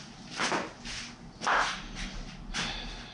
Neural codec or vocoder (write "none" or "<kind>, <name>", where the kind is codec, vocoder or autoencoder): none